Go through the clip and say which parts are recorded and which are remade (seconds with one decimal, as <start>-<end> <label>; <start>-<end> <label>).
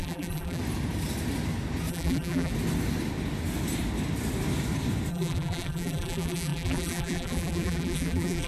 0.0-0.6 remade; 0.6-1.9 recorded; 1.9-2.5 remade; 2.5-5.1 recorded; 5.1-8.5 remade